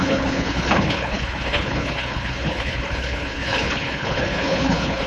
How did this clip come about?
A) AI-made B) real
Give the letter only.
A